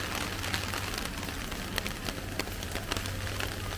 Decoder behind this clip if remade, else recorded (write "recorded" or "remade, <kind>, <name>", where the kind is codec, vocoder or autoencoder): recorded